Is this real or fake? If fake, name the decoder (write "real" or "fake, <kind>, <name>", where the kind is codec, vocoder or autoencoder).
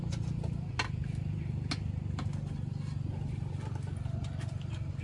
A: real